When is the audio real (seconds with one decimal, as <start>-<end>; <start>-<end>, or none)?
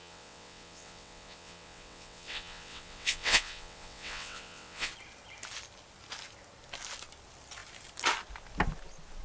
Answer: 4.9-9.2